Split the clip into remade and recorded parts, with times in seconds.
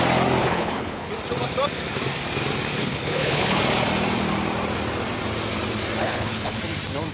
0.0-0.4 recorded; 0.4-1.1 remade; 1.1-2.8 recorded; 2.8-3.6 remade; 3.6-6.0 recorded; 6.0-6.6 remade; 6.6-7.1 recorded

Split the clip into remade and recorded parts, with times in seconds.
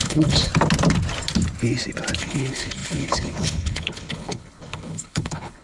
0.0-0.5 remade; 0.5-2.2 recorded; 2.2-5.6 remade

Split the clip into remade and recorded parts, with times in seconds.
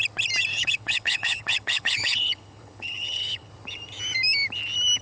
0.0-0.5 recorded; 0.5-3.5 remade; 3.5-5.0 recorded